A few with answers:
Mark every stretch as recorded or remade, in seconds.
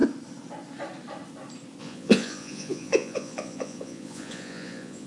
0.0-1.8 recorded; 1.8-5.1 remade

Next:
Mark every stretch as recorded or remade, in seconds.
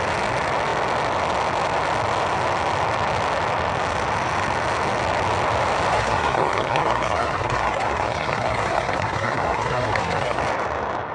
0.0-5.9 recorded; 5.9-10.4 remade; 10.4-11.1 recorded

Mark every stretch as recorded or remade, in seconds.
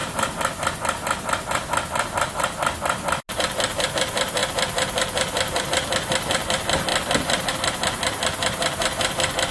0.0-9.5 recorded